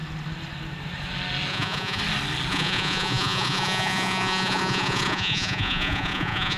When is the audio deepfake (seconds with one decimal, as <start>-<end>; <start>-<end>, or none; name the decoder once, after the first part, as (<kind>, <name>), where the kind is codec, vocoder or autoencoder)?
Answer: 1.5-2.0 (vocoder, Vocos); 2.5-6.6